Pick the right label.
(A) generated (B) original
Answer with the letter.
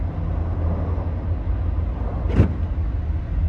B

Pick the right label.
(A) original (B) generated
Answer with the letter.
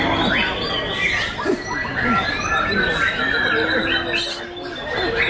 A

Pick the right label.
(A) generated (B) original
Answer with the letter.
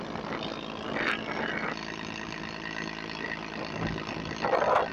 B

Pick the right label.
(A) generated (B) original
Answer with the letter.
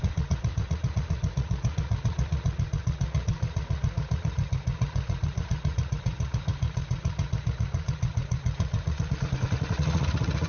A